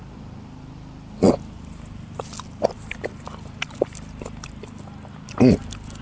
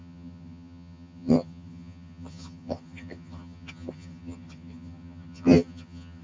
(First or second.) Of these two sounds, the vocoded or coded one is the second